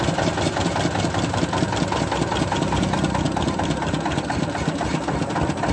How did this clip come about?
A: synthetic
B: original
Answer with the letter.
B